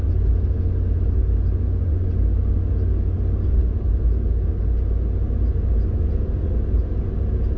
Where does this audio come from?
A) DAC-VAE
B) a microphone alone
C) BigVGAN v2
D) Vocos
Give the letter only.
B